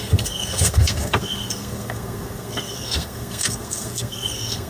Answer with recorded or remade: remade